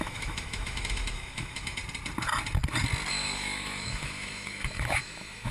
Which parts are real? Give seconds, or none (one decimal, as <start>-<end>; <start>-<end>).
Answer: 1.8-3.1